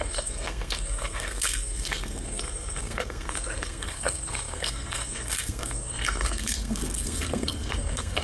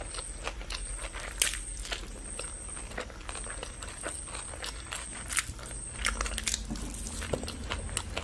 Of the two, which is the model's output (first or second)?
first